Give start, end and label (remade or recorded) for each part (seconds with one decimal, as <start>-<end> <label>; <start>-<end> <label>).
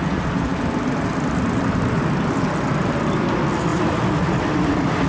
0.0-5.1 recorded